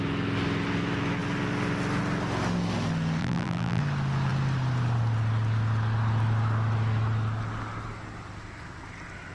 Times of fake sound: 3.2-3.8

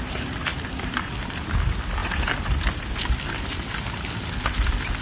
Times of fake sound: 0.5-1.4; 2.0-3.9

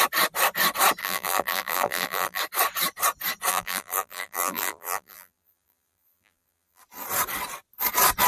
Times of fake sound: 1.0-2.4; 3.5-6.8

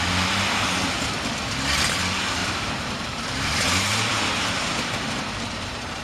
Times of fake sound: 2.4-6.0

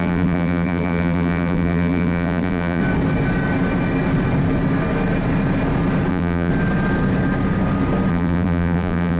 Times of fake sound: 0.0-2.8; 6.1-6.5; 8.1-9.2

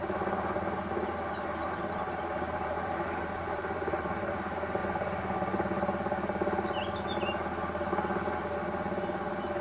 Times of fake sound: 0.0-4.8

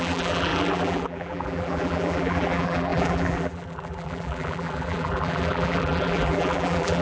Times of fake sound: 0.0-7.0